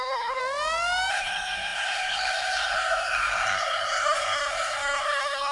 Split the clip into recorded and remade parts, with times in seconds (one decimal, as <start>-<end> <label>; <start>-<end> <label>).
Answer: 0.0-0.4 remade; 0.4-1.1 recorded; 1.1-5.5 remade